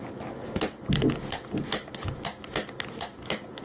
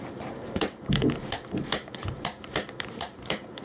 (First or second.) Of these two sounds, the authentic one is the first